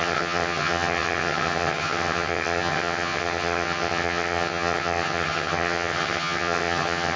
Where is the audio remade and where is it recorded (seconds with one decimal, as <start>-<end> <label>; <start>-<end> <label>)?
0.0-7.2 remade